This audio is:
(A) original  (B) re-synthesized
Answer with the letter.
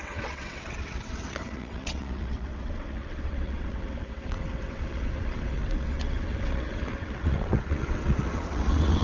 B